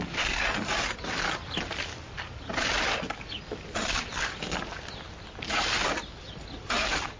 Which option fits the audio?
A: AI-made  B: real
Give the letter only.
B